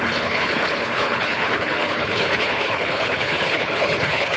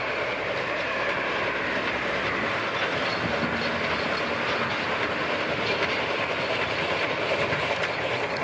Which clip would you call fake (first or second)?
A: first